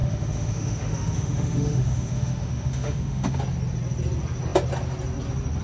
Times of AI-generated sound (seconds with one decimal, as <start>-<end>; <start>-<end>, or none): 0.0-3.4